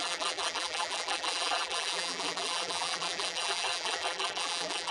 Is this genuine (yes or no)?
no